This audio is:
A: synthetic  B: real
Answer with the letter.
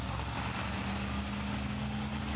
B